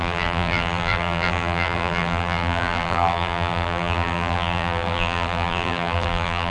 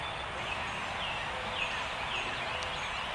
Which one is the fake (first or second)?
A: first